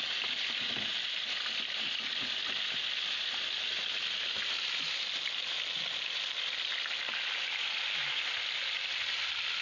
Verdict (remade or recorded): recorded